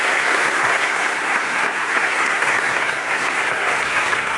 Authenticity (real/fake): fake